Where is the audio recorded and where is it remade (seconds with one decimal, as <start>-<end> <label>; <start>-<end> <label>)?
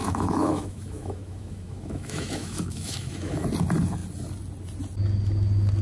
0.0-3.5 remade; 3.5-5.8 recorded